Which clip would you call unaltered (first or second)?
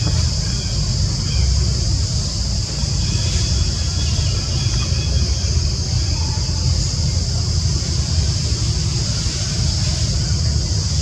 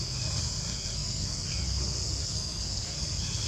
first